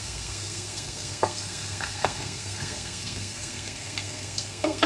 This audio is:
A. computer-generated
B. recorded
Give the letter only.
A